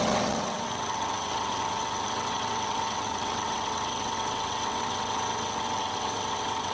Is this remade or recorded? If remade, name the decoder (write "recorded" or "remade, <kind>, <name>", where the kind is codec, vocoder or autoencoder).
remade, vocoder, WaveNeXt